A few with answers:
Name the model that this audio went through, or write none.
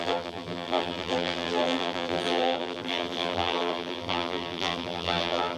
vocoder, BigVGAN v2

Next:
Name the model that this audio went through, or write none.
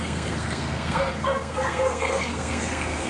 codec, SNAC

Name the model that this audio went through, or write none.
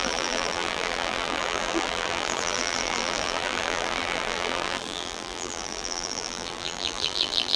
vocoder, BigVGAN v2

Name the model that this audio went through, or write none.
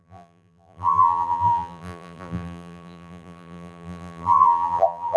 vocoder, BigVGAN v2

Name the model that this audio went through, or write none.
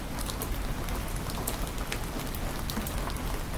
none